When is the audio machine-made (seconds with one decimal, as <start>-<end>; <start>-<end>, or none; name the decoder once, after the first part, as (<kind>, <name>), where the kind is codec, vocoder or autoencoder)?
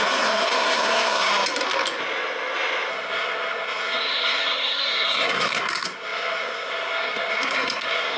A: 0.0-1.3 (codec, SNAC); 2.9-8.2